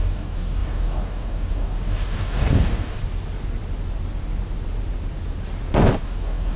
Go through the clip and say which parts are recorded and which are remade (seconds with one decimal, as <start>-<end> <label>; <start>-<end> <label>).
0.0-3.0 remade; 3.0-6.0 recorded; 6.0-6.6 remade